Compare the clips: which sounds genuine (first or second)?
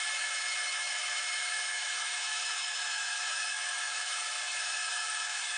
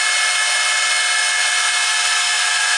second